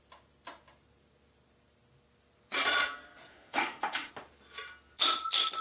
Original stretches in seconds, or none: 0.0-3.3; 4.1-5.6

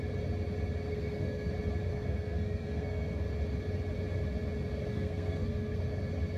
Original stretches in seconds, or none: 0.0-0.9; 1.5-1.9; 3.2-4.9; 5.8-6.4

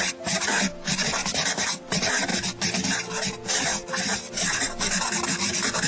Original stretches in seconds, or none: 0.0-5.9

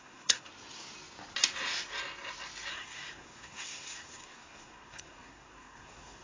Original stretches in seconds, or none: 0.5-2.7

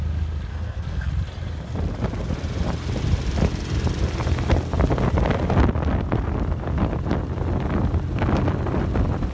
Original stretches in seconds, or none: 0.0-0.5; 1.1-9.3